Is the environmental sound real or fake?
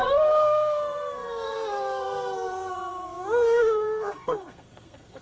fake